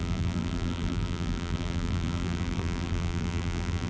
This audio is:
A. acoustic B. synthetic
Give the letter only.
B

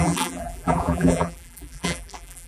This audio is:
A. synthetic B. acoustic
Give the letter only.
A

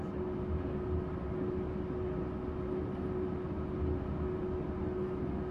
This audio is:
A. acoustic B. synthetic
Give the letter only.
A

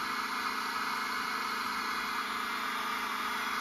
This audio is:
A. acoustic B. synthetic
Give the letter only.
A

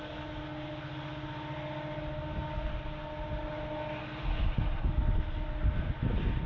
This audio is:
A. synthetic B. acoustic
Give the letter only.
B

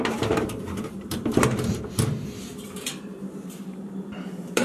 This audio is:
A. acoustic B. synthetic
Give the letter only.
B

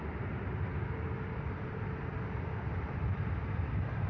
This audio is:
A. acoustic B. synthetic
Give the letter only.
B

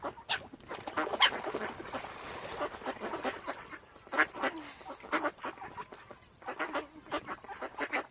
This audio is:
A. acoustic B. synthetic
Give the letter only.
A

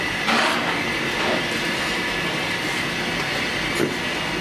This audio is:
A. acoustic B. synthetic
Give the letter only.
A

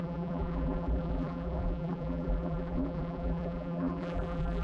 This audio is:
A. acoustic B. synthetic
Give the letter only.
B